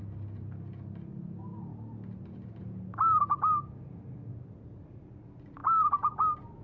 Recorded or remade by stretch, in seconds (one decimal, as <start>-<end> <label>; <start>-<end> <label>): 0.0-6.6 recorded